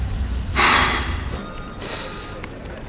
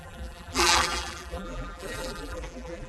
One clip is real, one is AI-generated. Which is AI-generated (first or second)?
second